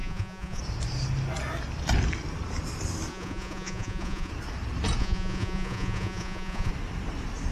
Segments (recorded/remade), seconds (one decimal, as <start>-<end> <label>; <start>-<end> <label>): 0.0-0.6 remade; 0.6-3.1 recorded; 3.1-4.3 remade; 4.3-5.0 recorded; 5.0-6.7 remade; 6.7-7.5 recorded

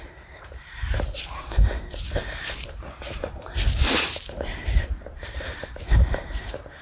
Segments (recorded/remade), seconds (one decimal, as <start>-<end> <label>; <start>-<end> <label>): 0.0-6.8 remade

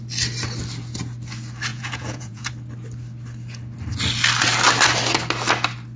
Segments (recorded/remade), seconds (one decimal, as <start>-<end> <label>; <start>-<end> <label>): 0.0-1.7 recorded; 1.7-2.5 remade; 2.5-6.0 recorded

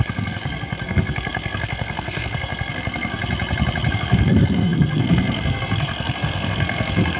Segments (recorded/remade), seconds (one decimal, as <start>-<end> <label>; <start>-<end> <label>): 0.0-3.2 remade; 3.2-3.9 recorded; 3.9-7.2 remade

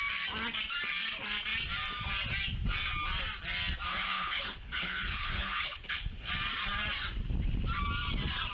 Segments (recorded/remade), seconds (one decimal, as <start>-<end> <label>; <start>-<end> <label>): 0.0-3.9 recorded; 3.9-6.3 remade; 6.3-8.5 recorded

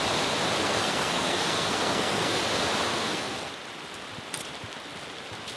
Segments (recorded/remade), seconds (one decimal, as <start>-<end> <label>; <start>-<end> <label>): 0.0-0.6 recorded; 0.6-2.4 remade; 2.4-2.9 recorded; 2.9-3.5 remade; 3.5-5.6 recorded

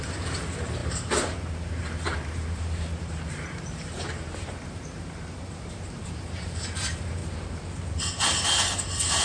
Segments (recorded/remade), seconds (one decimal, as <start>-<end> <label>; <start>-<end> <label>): 0.0-7.2 remade; 7.2-9.2 recorded

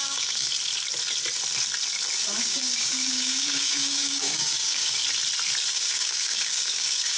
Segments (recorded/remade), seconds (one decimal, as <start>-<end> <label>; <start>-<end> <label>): 0.0-0.5 remade; 0.5-2.4 recorded; 2.4-5.0 remade; 5.0-5.7 recorded; 5.7-7.2 remade